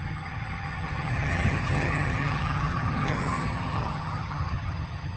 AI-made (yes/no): yes